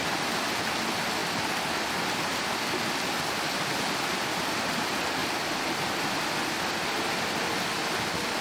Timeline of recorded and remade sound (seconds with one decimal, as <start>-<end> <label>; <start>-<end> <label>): 0.0-8.4 recorded